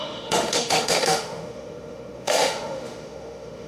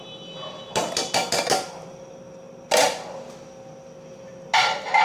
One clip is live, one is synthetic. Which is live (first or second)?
second